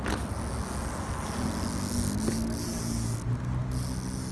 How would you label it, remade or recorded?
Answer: recorded